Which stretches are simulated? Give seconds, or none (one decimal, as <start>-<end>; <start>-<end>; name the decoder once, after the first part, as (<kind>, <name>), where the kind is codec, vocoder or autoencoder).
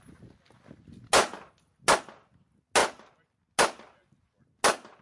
none